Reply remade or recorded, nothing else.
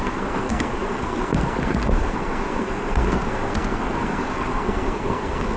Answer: remade